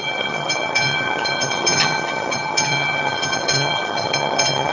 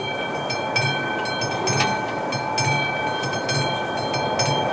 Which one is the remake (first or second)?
first